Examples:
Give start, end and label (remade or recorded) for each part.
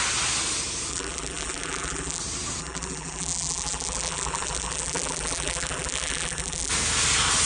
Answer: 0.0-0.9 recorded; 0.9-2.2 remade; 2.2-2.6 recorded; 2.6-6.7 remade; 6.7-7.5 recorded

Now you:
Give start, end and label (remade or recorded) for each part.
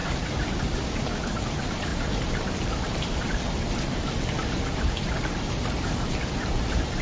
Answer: 0.0-1.9 recorded; 1.9-6.1 remade; 6.1-7.0 recorded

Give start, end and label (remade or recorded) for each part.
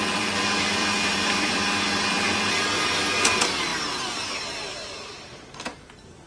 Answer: 0.0-6.3 remade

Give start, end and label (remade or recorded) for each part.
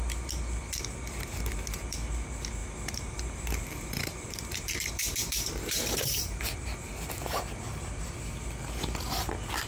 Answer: 0.0-2.6 recorded; 2.6-6.4 remade; 6.4-9.7 recorded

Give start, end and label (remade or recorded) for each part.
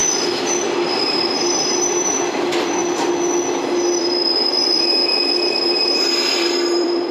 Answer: 0.0-0.6 recorded; 0.6-2.8 remade; 2.8-4.0 recorded; 4.0-5.0 remade; 5.0-5.5 recorded; 5.5-7.1 remade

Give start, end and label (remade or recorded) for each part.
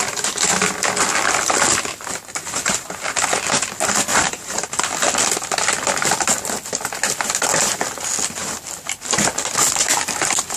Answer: 0.0-4.1 recorded; 4.1-4.8 remade; 4.8-10.6 recorded